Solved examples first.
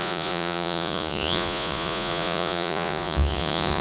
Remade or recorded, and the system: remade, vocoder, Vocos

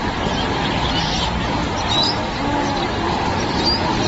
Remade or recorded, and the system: recorded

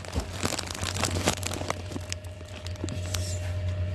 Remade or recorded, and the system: recorded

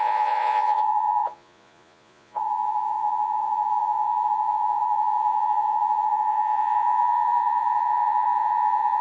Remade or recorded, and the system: remade, vocoder, Vocos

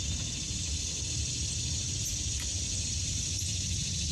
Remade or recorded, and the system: recorded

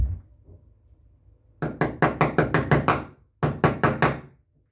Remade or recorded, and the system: recorded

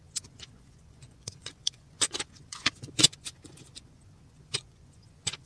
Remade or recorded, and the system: remade, vocoder, Vocos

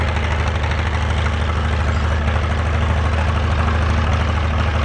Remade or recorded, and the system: recorded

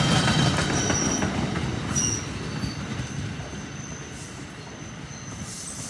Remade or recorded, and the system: recorded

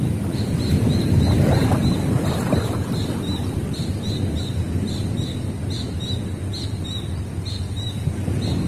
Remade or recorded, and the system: recorded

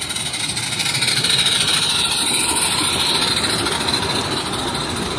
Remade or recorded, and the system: recorded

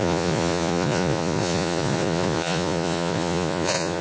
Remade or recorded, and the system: remade, vocoder, Vocos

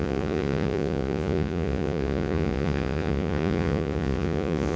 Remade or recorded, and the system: remade, vocoder, Vocos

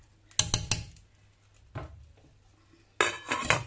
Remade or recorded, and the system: recorded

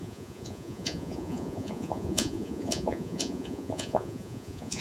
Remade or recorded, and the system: remade, vocoder, Vocos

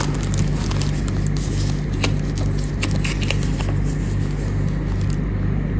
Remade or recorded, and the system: recorded